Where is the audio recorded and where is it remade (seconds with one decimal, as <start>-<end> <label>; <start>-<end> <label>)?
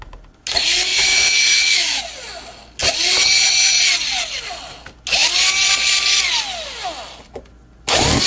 0.0-0.9 recorded; 0.9-2.0 remade; 2.0-8.3 recorded